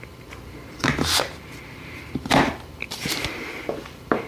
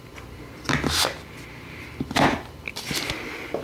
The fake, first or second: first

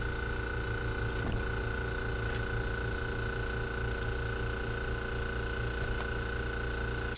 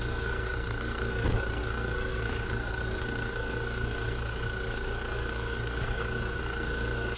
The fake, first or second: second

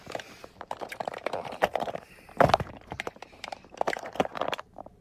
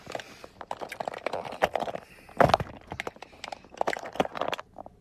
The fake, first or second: first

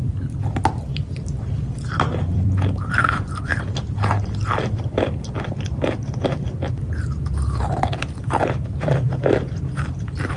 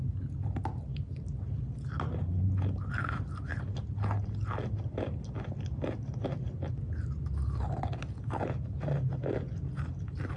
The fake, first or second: first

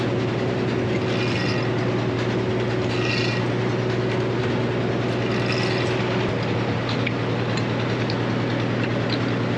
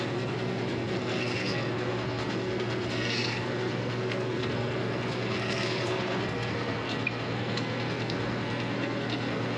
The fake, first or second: second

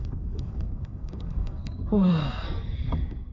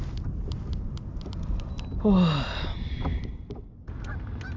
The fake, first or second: first